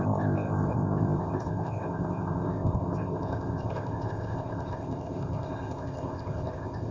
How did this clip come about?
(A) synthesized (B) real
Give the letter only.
A